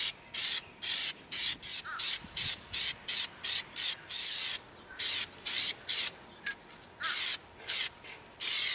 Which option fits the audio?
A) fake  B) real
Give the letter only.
B